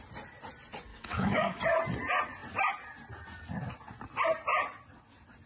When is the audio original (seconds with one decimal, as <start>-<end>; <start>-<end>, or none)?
0.0-0.9; 1.6-5.5